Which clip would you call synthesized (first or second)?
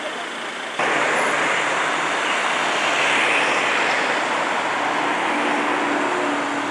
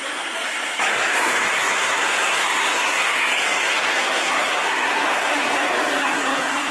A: second